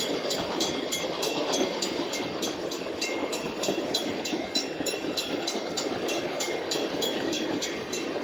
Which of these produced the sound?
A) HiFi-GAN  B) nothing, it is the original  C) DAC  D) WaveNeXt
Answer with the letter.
C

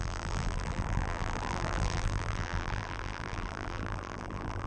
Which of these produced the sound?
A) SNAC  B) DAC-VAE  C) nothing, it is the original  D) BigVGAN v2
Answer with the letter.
D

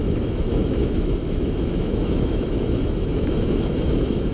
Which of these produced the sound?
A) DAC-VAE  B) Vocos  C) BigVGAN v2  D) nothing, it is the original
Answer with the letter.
A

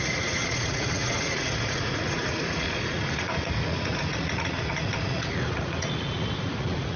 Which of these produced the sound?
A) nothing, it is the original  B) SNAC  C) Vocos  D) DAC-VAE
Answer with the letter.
C